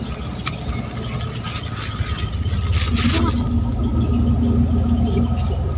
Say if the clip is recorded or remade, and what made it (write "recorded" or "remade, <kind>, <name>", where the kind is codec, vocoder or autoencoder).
recorded